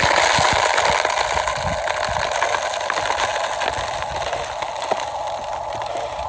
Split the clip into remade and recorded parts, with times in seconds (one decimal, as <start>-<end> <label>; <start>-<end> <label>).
0.0-6.3 recorded